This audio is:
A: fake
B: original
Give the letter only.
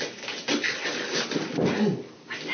B